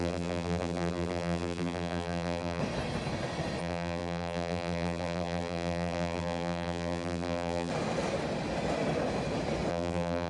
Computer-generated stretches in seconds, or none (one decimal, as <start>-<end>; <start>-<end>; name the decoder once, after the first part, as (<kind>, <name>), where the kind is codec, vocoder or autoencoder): 0.0-2.6 (vocoder, BigVGAN v2); 3.6-7.7; 9.7-10.3